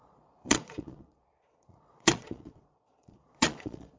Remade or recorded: remade